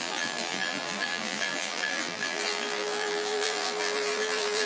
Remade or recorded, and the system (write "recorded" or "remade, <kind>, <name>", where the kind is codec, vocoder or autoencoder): remade, vocoder, BigVGAN v2